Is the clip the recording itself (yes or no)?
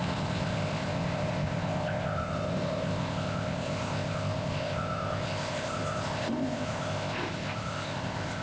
no